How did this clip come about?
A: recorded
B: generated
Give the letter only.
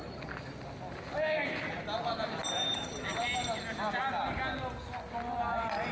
A